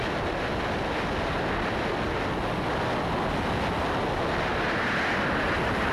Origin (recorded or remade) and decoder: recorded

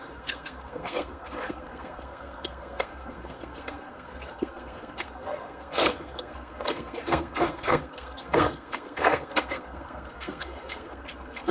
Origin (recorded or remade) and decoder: remade, codec, SNAC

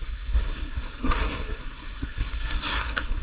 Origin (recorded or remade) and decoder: remade, codec, SNAC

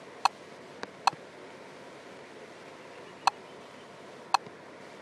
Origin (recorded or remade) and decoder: recorded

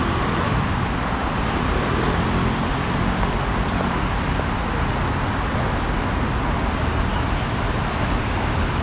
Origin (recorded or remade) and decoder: recorded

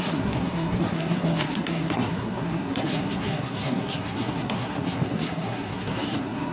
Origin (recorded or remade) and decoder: remade, codec, SNAC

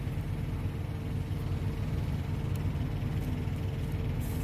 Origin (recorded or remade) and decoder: recorded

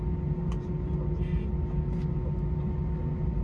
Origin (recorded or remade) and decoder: recorded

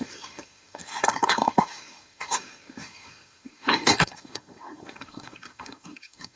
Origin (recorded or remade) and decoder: remade, codec, SNAC